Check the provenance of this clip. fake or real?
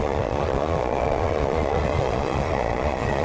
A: fake